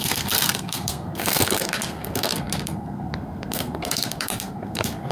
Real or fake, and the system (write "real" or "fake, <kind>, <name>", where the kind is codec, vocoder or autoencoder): fake, codec, SNAC